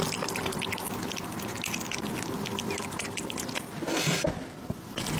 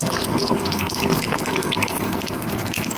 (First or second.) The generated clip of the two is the second